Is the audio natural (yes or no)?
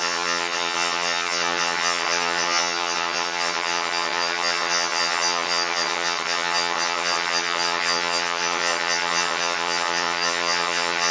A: no